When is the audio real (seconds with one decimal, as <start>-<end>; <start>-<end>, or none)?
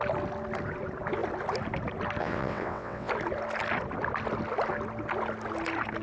0.0-2.2; 3.1-6.0